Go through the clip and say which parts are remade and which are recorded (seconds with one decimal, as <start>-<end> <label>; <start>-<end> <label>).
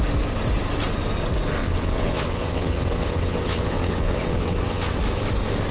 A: 0.0-1.6 recorded; 1.6-5.0 remade; 5.0-5.7 recorded